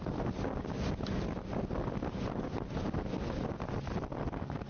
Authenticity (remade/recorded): recorded